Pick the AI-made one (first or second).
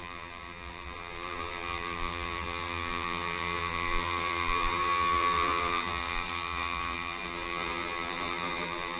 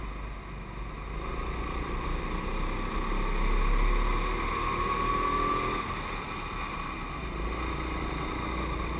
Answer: first